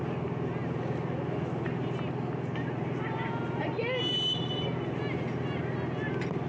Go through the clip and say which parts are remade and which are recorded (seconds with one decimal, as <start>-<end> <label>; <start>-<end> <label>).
0.0-6.5 recorded